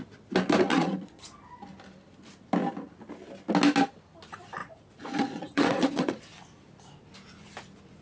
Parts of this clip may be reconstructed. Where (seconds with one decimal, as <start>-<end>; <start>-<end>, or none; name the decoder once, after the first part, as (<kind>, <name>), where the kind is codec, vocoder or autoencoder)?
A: 0.7-1.2 (vocoder, Vocos); 4.6-6.1